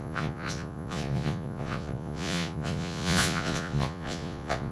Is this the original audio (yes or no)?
no